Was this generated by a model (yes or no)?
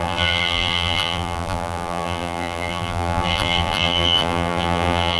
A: yes